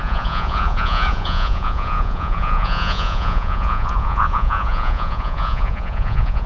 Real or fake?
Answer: fake